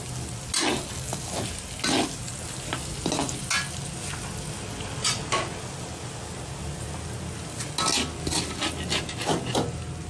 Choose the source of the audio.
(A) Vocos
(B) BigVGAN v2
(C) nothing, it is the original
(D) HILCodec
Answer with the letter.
C